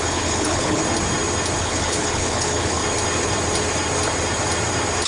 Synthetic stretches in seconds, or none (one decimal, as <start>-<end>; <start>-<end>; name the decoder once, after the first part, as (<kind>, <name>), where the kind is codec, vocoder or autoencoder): 0.0-0.8 (codec, HILCodec); 1.6-2.8